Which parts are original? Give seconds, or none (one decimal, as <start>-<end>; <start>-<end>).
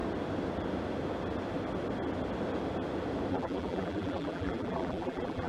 0.0-3.3